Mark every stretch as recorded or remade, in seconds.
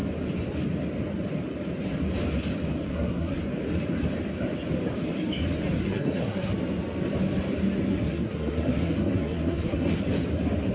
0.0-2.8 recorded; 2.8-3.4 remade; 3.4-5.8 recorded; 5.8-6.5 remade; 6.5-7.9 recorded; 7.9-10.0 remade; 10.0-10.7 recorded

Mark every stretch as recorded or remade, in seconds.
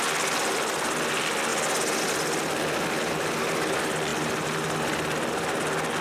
0.0-6.0 recorded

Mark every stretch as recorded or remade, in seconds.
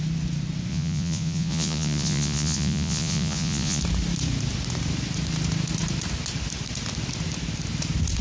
0.0-0.7 recorded; 0.7-3.8 remade; 3.8-8.2 recorded